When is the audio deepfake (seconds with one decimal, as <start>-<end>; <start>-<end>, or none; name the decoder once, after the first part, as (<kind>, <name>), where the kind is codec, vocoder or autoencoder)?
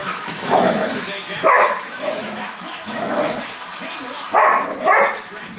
0.0-3.4 (autoencoder, DAC-VAE)